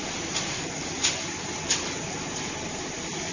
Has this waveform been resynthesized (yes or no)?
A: no